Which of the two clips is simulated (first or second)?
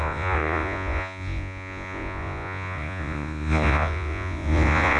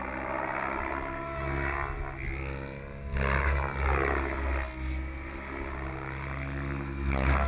first